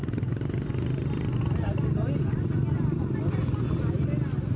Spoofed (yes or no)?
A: no